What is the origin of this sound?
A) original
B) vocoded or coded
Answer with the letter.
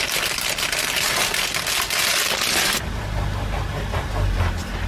A